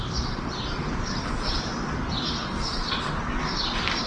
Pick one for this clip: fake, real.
real